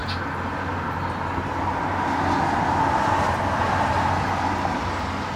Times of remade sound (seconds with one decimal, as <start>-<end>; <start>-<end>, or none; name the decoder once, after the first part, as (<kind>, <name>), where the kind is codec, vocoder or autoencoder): none